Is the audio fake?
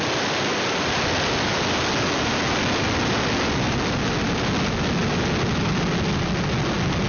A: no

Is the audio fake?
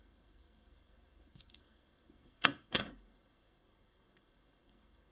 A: yes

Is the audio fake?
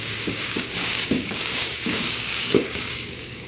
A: yes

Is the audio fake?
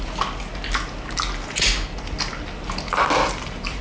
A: no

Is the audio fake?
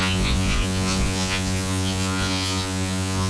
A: yes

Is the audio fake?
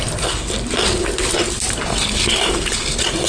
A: no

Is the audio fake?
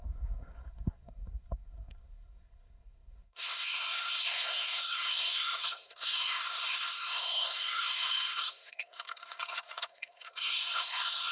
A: yes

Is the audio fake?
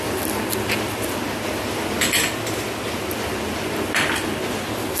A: no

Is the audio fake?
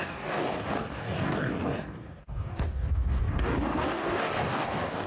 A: yes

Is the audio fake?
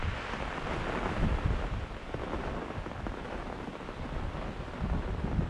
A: no